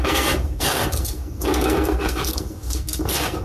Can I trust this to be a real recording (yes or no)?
no